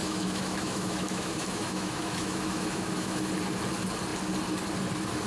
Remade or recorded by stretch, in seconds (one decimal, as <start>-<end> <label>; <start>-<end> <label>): 0.0-3.2 remade; 3.2-5.3 recorded